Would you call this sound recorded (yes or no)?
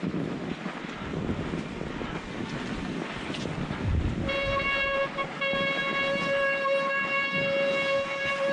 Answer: yes